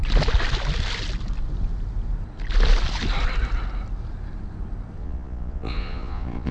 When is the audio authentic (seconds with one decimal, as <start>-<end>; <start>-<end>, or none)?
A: 0.0-5.0